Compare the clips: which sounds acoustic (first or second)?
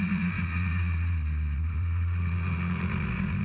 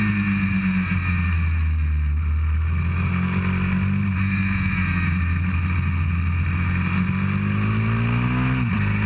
second